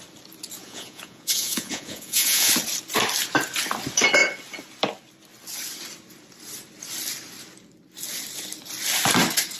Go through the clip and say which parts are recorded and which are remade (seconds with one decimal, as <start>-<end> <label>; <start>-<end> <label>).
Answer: 0.0-0.6 recorded; 0.6-2.5 remade; 2.5-9.6 recorded